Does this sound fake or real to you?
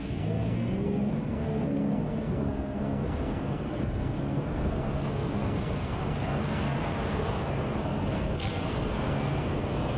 fake